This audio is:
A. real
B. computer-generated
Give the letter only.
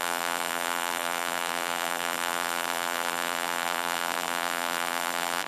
B